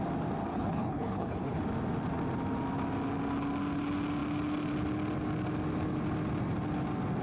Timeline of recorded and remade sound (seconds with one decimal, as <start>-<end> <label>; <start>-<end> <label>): 0.0-0.5 recorded; 0.5-1.6 remade; 1.6-7.2 recorded